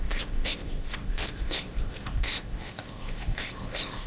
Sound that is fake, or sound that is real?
fake